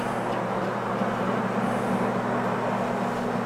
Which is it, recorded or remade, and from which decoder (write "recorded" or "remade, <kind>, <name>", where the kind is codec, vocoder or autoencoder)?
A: recorded